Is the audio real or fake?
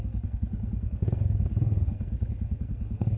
fake